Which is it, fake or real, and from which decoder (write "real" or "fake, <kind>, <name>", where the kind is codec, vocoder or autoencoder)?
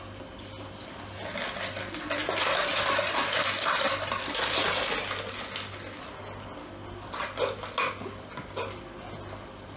real